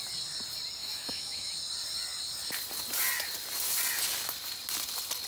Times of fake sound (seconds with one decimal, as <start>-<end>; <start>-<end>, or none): 0.8-1.5